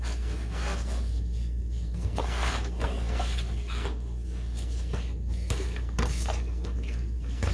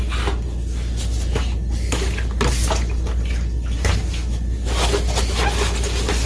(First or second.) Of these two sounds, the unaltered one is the second